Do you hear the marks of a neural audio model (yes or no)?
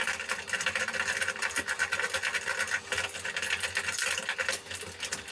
no